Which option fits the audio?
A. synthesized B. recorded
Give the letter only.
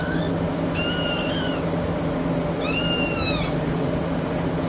B